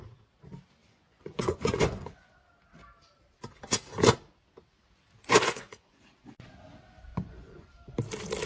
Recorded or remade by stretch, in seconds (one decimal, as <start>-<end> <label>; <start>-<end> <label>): 0.0-0.8 recorded; 0.8-2.4 remade; 2.4-5.3 recorded; 5.3-6.5 remade; 6.5-7.1 recorded; 7.1-7.7 remade; 7.7-8.5 recorded